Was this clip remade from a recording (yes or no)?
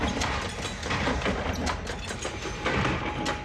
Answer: no